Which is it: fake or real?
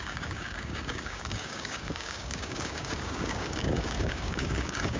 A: fake